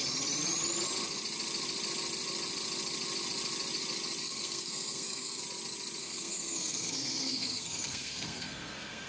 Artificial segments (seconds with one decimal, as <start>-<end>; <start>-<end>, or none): 4.2-5.4; 6.0-9.1